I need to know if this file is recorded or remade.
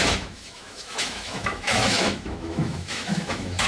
remade